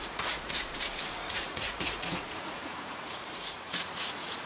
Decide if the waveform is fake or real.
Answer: fake